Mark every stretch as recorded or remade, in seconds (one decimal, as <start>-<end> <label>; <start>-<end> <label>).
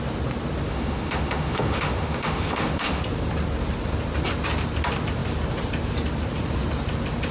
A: 0.0-0.7 recorded; 0.7-3.0 remade; 3.0-7.3 recorded